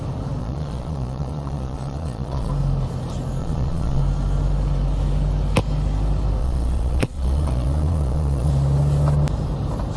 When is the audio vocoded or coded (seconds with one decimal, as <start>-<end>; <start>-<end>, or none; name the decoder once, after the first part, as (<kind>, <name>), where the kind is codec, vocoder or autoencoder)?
0.4-2.5 (vocoder, Vocos); 3.4-4.0; 6.4-8.5